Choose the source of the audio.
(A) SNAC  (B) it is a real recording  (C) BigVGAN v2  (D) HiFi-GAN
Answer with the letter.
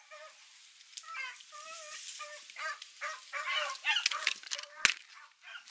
B